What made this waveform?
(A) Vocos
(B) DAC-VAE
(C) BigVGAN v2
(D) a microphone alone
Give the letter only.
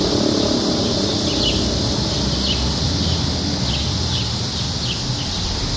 D